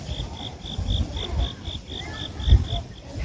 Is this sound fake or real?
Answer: real